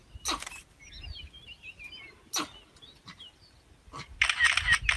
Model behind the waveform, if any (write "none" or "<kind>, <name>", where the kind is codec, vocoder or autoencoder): none